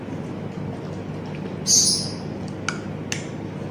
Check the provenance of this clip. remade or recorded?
recorded